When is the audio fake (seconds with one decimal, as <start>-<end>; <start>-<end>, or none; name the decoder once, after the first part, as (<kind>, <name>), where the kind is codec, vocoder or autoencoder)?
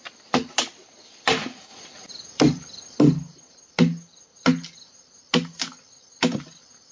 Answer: 1.7-3.0 (vocoder, BigVGAN v2)